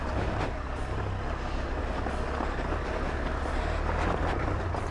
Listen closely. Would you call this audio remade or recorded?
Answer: recorded